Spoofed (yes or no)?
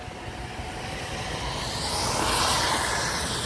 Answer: no